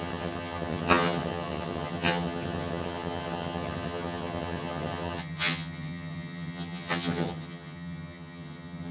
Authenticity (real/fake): fake